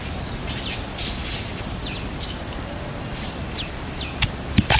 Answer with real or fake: real